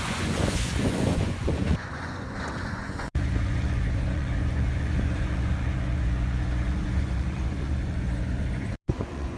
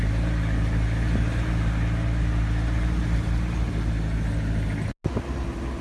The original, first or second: second